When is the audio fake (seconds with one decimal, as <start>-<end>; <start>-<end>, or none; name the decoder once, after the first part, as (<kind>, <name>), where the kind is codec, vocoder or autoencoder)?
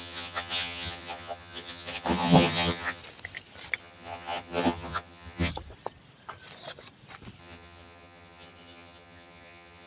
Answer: 0.0-3.0 (vocoder, HiFi-GAN); 3.8-5.5; 7.4-9.9